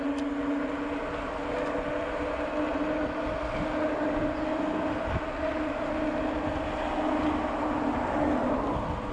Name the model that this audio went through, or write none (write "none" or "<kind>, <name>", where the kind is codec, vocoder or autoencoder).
none